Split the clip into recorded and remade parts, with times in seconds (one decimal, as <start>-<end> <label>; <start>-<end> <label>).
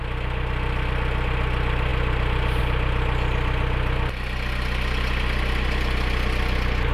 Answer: 0.0-6.9 recorded